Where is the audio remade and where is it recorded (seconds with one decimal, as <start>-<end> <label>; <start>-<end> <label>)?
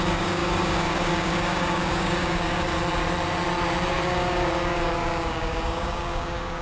0.0-2.7 remade; 2.7-3.9 recorded; 3.9-6.6 remade